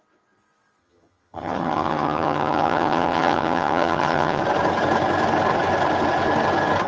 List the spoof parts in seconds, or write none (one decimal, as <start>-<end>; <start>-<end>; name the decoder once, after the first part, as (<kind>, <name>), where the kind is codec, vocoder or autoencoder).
0.8-4.4 (vocoder, HiFi-GAN)